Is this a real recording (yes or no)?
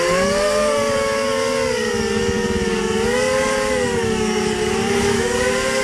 no